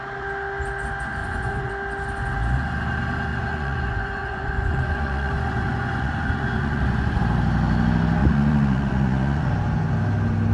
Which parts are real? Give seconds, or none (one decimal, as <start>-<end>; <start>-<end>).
0.0-1.2; 1.7-3.3; 7.2-8.2; 9.5-10.5